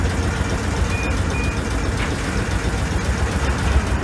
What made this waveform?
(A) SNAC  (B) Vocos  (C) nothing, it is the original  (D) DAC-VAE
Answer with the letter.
C